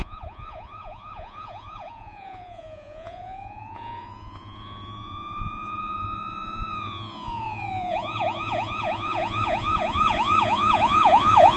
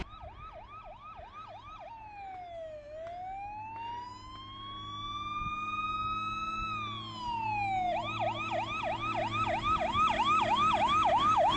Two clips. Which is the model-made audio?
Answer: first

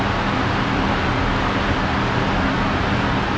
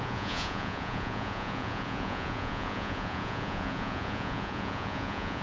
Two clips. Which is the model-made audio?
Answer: second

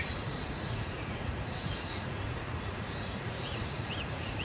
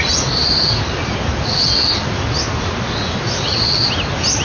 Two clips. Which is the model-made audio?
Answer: first